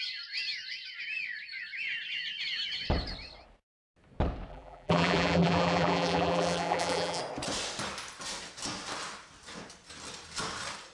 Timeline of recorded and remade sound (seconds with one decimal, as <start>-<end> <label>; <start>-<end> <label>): 0.0-4.5 recorded; 4.5-7.2 remade; 7.2-10.9 recorded